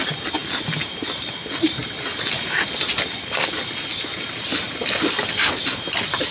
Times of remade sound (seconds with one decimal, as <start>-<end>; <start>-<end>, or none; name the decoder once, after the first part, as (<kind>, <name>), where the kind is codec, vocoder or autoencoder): none